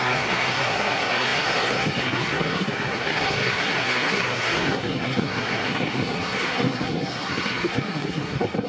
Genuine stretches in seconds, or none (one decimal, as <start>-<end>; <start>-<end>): none